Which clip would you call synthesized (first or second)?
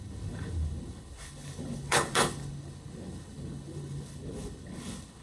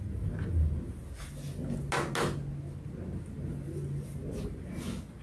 first